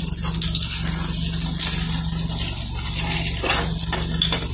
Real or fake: real